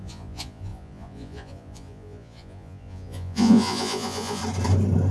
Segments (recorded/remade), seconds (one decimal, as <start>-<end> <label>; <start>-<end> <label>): 0.0-4.4 remade; 4.4-5.1 recorded